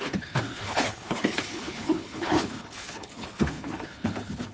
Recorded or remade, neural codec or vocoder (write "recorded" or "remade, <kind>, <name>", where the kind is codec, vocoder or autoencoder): remade, codec, HILCodec